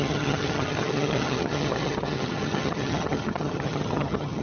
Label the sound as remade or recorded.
remade